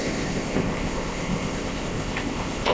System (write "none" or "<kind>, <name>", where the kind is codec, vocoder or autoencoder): codec, ZipCodec